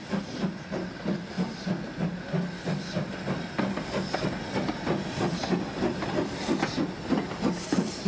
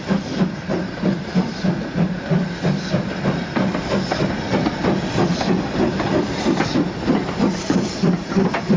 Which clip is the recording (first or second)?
first